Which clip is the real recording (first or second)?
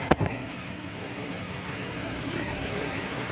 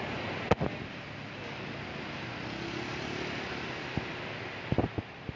second